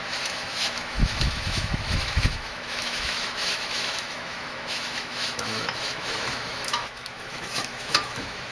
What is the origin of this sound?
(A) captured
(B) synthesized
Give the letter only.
B